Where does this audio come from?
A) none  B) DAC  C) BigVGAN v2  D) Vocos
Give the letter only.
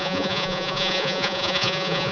D